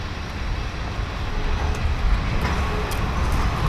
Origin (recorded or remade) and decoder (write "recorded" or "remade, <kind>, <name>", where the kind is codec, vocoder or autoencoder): recorded